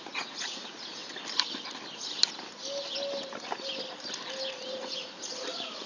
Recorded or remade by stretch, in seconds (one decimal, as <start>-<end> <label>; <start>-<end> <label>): 0.0-1.0 remade; 1.0-4.5 recorded; 4.5-5.9 remade